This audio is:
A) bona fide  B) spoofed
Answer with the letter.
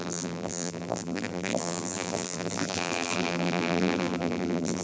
B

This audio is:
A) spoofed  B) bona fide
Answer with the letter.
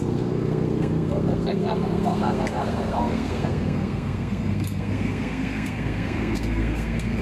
A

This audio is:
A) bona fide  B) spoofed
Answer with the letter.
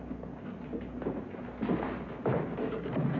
A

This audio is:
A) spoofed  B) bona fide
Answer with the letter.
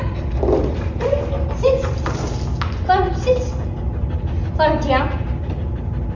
B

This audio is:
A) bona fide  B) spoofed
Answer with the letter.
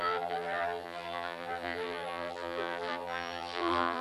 B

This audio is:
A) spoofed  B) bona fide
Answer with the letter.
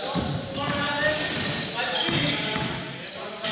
B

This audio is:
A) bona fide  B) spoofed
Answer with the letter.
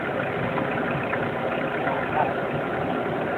A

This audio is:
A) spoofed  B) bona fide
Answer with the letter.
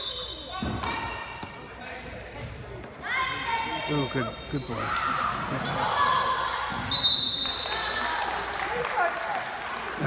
B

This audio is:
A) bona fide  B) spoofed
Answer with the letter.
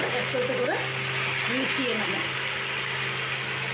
A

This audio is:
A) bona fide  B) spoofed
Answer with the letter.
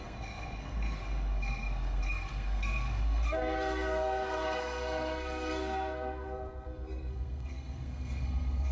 B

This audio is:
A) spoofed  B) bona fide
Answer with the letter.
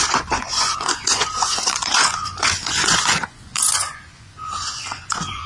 A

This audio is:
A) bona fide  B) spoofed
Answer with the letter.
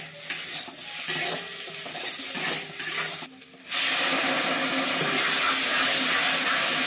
A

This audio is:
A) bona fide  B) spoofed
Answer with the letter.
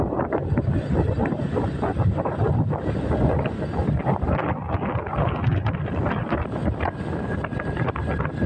A